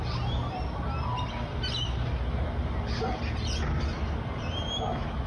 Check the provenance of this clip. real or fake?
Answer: real